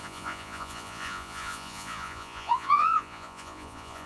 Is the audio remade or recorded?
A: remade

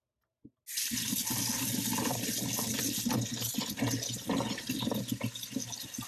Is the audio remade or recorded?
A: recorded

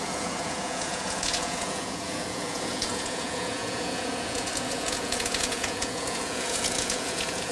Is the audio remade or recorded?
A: remade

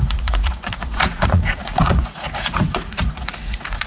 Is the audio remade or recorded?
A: remade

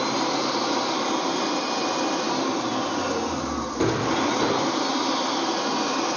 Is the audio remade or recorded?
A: recorded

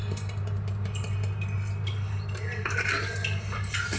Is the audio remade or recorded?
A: recorded